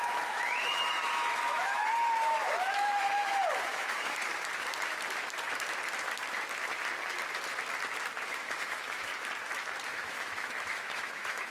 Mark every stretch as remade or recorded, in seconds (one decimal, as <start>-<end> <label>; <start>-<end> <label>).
0.0-4.3 remade; 4.3-8.3 recorded; 8.3-9.1 remade; 9.1-9.9 recorded; 9.9-11.5 remade